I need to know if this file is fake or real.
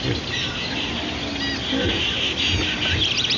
real